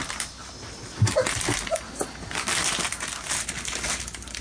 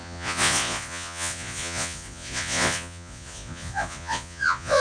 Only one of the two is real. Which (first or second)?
first